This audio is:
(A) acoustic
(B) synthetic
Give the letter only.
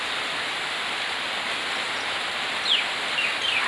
A